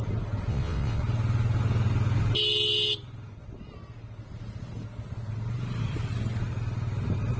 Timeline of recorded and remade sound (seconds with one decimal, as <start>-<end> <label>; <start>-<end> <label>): 0.0-0.5 recorded; 0.5-1.0 remade; 1.0-7.4 recorded